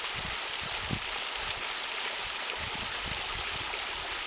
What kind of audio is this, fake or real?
real